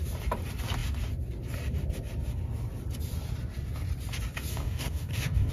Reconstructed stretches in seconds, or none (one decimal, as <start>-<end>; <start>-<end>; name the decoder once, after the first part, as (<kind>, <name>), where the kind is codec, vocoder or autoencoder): 4.5-5.5 (codec, DAC)